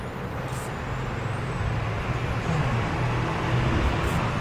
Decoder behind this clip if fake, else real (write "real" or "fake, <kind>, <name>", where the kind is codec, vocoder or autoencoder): real